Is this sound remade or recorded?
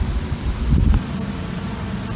recorded